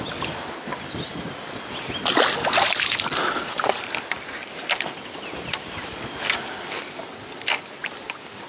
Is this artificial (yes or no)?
no